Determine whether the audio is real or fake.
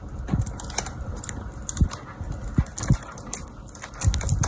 real